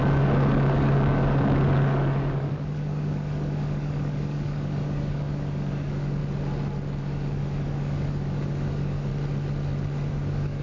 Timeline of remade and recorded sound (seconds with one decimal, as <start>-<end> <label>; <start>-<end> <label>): 0.0-6.2 remade; 6.2-7.0 recorded; 7.0-9.1 remade; 9.1-10.1 recorded; 10.1-10.6 remade